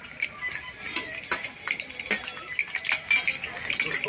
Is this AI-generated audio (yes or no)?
no